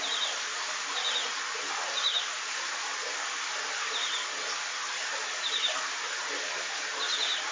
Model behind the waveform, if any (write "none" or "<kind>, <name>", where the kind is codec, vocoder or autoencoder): none